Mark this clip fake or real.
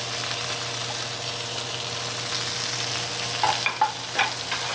real